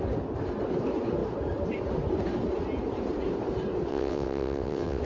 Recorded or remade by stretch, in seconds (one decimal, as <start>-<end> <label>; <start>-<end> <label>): 0.0-3.9 recorded; 3.9-5.0 remade